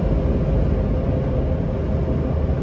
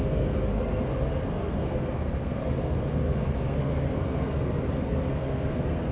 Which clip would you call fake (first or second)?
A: second